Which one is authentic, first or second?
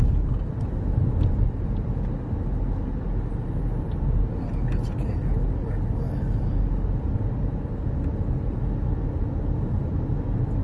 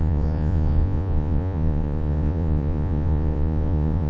first